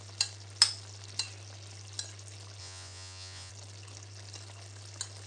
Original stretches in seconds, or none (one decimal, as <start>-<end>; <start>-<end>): 0.0-2.6; 3.5-5.3